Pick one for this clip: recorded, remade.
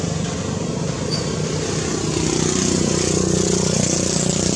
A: recorded